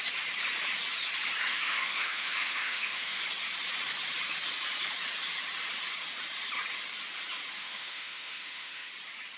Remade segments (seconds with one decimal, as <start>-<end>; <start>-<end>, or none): 1.5-3.2; 7.6-8.9

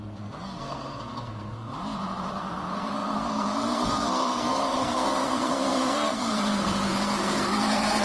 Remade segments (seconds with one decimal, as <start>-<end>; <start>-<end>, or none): 0.0-1.7; 2.3-8.0

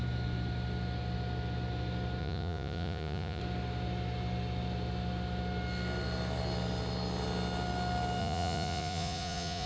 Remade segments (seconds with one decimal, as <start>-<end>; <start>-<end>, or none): 2.2-3.4; 8.2-9.7

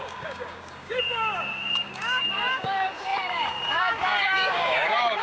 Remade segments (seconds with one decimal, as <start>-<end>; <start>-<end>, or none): 0.0-5.2

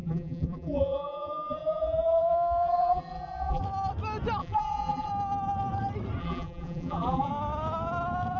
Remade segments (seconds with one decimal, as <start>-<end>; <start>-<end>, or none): 0.0-3.6; 4.4-5.1; 6.2-7.3